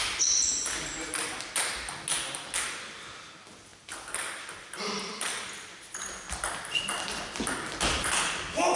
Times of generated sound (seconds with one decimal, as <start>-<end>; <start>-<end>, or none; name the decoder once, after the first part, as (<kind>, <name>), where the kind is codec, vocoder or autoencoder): 3.7-6.6 (vocoder, BigVGAN v2)